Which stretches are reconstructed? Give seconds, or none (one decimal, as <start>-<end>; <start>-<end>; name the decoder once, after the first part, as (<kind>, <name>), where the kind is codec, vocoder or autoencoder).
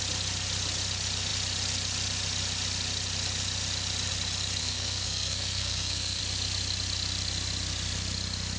4.6-6.2 (codec, SNAC)